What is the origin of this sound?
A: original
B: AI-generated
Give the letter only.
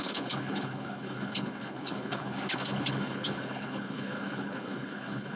B